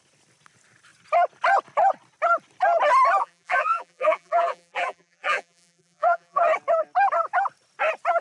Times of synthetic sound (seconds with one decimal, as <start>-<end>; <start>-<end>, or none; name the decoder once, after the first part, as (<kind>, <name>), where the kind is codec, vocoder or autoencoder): 3.2-6.4 (vocoder, BigVGAN v2)